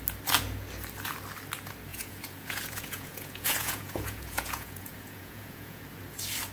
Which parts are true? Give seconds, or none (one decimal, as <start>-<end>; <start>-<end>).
0.0-1.9; 5.8-6.5